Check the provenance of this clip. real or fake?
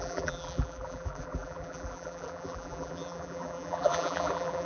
fake